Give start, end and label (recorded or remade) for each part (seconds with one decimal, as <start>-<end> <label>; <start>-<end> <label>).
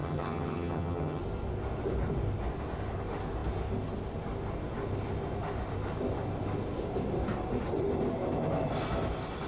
0.0-1.2 remade; 1.2-9.5 recorded